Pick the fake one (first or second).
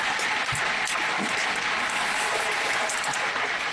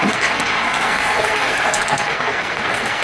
second